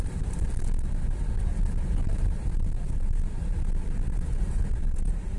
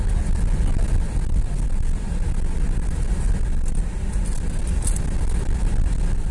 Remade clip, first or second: first